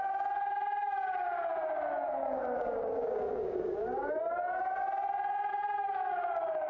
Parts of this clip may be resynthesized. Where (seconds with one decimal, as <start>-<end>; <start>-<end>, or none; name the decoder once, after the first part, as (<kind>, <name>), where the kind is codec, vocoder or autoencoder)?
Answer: 2.2-4.2 (codec, DAC); 5.5-6.7